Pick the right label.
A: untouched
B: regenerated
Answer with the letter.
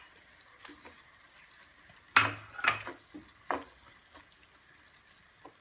A